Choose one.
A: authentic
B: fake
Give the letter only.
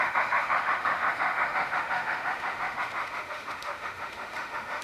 B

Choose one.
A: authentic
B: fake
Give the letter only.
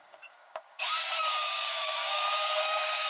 B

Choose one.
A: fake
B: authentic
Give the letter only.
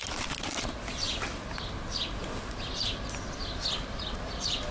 B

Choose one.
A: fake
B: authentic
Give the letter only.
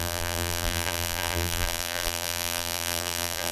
A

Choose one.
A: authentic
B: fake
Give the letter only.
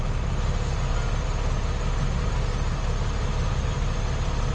A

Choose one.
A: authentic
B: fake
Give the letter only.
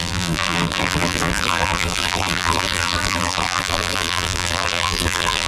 B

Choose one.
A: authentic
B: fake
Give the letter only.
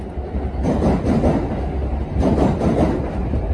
A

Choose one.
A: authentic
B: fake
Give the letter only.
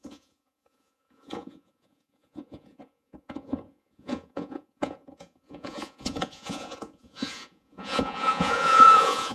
B